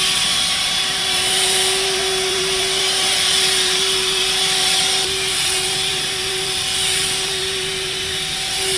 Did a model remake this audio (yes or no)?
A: yes